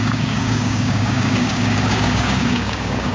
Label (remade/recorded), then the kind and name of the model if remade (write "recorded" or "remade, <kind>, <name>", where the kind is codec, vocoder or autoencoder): remade, codec, DAC